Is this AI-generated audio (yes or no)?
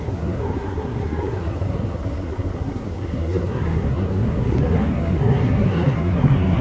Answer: yes